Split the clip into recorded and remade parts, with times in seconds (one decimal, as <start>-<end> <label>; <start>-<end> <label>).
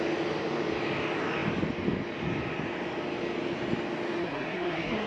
0.0-4.2 recorded; 4.2-5.1 remade